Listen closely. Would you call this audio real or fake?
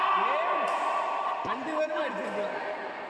real